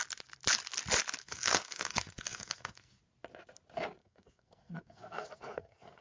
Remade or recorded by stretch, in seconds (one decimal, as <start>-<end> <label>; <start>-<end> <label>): 0.0-1.2 recorded; 1.2-3.0 remade; 3.0-4.0 recorded; 4.0-6.0 remade